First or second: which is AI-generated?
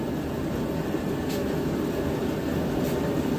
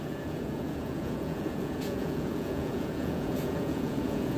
second